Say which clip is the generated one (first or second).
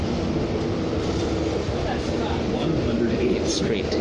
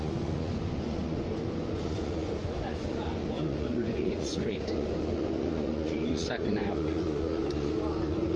second